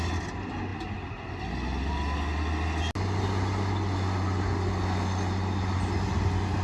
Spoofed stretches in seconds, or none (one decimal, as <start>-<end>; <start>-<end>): none